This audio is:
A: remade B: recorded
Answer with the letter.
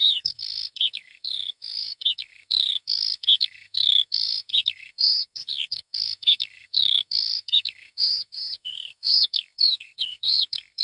A